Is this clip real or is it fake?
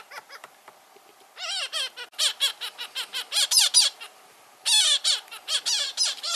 real